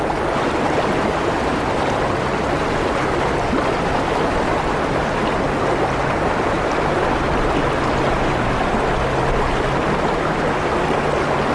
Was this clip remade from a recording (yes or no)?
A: no